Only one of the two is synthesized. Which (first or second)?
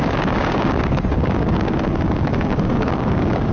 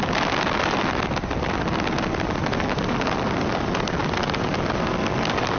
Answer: first